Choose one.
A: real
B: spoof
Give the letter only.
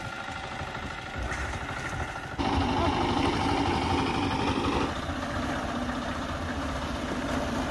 A